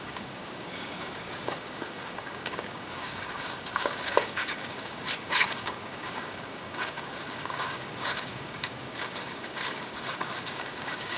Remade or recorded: remade